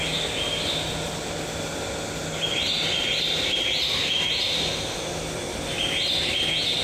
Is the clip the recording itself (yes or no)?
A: yes